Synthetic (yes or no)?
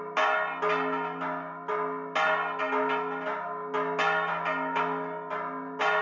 no